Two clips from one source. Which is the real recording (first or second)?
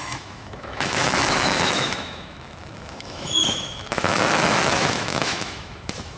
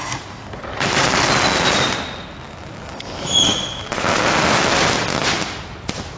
second